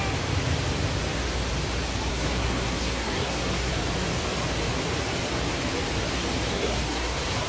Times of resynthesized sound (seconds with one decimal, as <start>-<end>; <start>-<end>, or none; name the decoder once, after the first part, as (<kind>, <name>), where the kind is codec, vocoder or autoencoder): 2.1-3.7 (codec, SNAC); 6.5-7.5